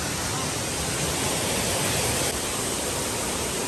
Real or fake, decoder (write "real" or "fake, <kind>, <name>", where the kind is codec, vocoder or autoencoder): real